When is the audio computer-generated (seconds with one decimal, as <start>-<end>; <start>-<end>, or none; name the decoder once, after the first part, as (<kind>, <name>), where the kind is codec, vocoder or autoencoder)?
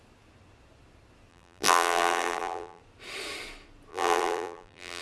1.3-2.8 (vocoder, BigVGAN v2); 3.9-5.0